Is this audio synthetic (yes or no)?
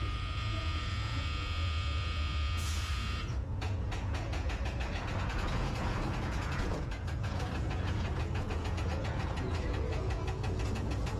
yes